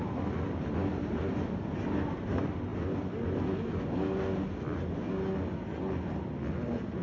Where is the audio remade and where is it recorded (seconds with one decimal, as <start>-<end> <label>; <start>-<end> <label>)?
0.0-7.0 recorded